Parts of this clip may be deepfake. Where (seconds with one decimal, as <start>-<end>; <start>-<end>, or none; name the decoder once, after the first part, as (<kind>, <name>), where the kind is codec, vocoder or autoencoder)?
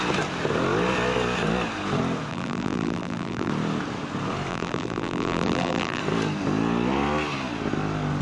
2.3-3.5 (vocoder, BigVGAN v2); 4.5-6.0